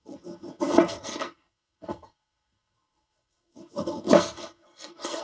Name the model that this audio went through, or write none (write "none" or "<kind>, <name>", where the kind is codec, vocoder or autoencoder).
codec, SNAC